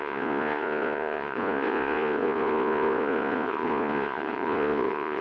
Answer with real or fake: fake